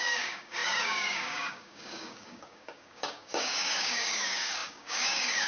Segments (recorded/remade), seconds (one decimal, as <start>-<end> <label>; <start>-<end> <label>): 0.0-5.5 remade